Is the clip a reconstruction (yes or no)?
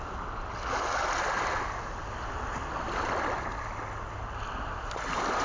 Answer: no